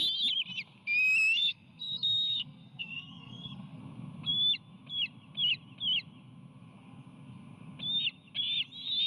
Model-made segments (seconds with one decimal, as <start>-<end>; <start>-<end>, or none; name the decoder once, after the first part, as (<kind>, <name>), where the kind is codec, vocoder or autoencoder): 1.4-3.8 (codec, SNAC)